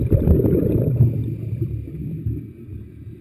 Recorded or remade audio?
remade